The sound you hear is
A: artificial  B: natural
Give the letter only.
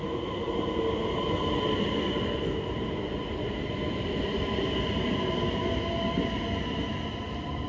B